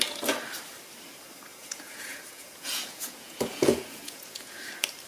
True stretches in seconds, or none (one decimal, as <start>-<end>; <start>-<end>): 0.0-1.5; 4.6-5.1